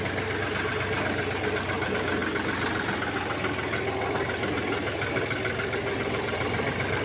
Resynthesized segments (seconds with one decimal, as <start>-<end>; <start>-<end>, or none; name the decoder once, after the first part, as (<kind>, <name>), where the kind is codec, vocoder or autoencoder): none

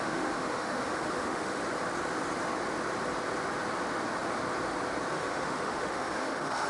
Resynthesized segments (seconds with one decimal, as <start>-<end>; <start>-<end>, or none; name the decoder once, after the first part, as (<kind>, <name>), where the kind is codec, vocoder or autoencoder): 0.0-1.6 (autoencoder, DAC-VAE); 5.1-6.7

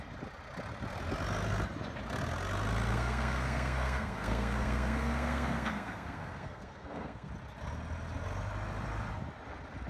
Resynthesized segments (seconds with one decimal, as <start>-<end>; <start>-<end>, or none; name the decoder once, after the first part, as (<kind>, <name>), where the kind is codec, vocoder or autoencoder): 2.9-7.3 (codec, SNAC)

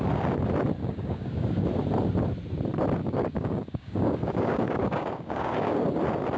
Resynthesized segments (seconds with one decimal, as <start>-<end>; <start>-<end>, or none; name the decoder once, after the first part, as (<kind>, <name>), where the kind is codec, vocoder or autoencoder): 0.8-1.7 (codec, DAC); 3.0-5.9

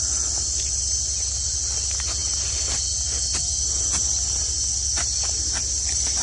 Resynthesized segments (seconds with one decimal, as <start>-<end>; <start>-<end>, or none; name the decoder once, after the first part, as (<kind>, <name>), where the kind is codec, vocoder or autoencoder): none

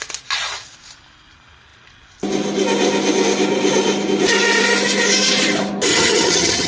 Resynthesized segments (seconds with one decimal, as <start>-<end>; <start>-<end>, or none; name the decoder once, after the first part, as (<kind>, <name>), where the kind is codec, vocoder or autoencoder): 5.9-6.7 (vocoder, HiFi-GAN)

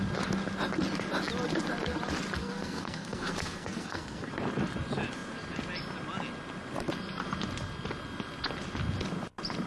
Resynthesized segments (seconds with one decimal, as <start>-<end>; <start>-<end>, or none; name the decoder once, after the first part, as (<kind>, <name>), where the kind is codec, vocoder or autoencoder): 2.4-4.3 (codec, SNAC)

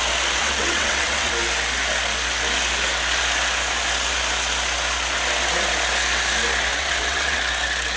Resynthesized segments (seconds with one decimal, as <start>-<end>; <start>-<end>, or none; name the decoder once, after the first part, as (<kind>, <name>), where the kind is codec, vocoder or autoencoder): 0.4-1.3 (vocoder, WaveNeXt); 6.8-7.4